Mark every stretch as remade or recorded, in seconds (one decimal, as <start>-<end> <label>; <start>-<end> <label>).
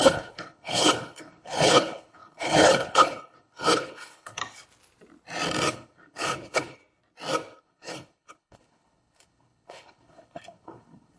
0.0-4.4 remade; 4.4-5.7 recorded; 5.7-6.8 remade; 6.8-7.6 recorded; 7.6-11.2 remade